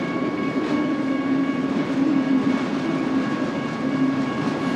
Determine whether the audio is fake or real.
fake